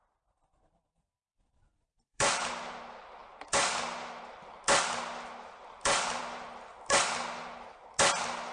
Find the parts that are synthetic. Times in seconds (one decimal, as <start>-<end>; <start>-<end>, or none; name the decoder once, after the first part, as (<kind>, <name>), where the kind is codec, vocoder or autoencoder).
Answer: 1.3-2.5 (vocoder, BigVGAN v2); 3.2-4.2; 5.6-6.2